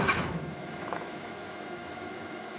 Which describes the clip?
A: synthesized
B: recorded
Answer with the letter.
A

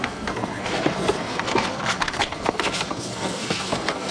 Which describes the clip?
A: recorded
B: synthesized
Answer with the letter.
B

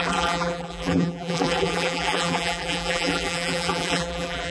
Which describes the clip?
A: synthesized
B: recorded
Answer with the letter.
A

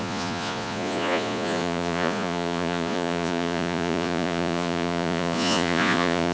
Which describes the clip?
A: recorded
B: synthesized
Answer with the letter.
B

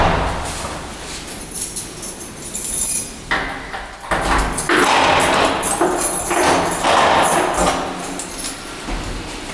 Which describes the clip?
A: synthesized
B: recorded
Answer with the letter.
B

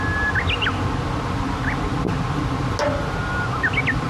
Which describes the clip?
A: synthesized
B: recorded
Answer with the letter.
B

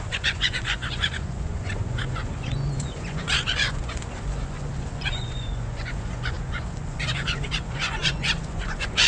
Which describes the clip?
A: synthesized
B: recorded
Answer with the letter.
A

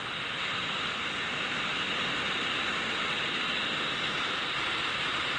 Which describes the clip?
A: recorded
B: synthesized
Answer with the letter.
A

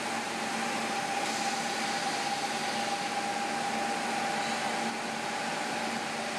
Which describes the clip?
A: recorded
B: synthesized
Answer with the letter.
A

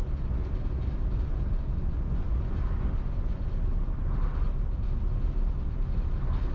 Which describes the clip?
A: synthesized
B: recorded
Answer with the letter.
B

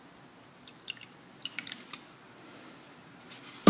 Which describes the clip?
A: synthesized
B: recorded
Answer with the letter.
B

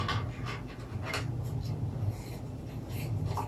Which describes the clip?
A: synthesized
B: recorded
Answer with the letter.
B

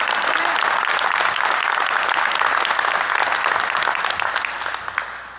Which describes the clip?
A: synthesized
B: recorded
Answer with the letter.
B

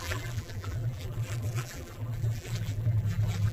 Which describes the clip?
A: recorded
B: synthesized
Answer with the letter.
B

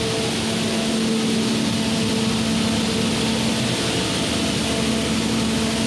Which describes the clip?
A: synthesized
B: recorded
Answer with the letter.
B